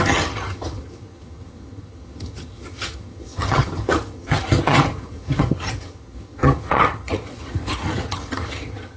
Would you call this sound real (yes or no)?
no